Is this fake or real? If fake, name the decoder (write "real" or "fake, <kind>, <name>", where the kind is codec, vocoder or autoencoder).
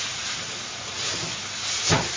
real